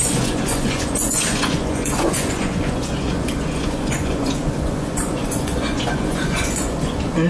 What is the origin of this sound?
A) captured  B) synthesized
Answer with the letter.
B